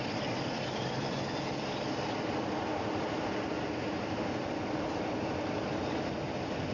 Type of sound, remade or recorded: recorded